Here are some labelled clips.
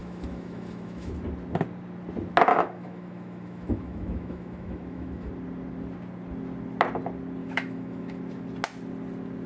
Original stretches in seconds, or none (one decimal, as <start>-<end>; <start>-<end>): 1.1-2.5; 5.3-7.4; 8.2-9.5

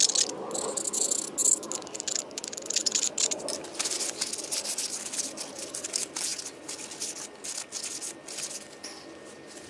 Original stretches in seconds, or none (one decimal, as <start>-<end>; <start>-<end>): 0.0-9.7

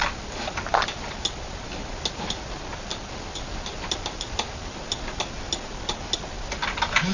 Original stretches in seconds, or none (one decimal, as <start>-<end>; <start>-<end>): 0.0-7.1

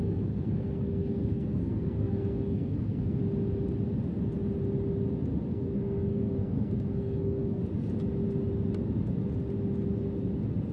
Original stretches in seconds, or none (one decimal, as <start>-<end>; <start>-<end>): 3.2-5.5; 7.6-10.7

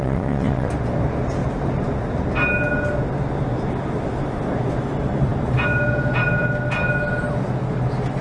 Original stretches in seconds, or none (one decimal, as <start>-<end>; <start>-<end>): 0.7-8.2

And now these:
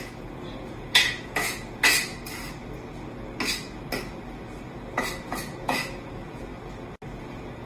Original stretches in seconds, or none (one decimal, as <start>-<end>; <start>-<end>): 2.1-5.2; 6.5-7.2